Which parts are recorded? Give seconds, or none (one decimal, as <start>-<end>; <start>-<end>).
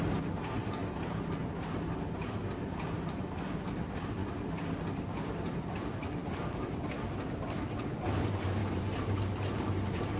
1.4-2.7; 4.2-5.8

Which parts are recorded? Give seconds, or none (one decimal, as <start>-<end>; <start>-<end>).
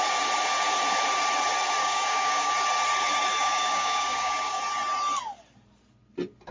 0.0-1.8; 2.5-3.4; 4.6-6.5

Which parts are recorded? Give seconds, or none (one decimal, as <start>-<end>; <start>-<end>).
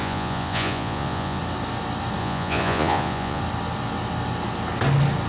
1.4-2.2; 3.4-5.3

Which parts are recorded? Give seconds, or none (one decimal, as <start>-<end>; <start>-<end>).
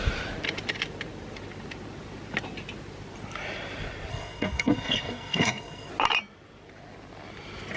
0.0-4.1; 5.9-7.8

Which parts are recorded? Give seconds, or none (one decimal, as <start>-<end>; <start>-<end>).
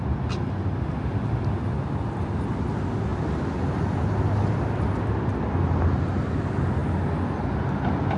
0.0-8.2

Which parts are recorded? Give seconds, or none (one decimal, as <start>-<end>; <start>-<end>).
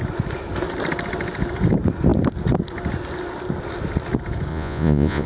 0.0-4.5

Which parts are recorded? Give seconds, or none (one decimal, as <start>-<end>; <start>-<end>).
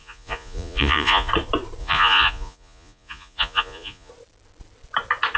1.3-1.8; 4.1-5.4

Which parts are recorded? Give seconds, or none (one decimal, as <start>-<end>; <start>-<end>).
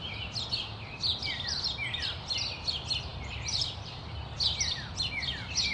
0.0-5.7